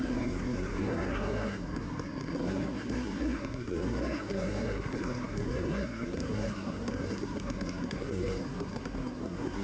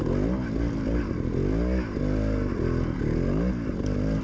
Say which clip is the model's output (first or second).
first